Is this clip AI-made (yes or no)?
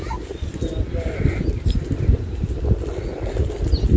no